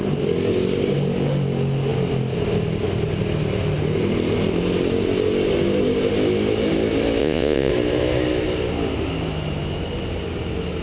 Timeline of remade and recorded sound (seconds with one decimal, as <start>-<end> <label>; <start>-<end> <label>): 0.0-7.2 recorded; 7.2-7.7 remade; 7.7-10.8 recorded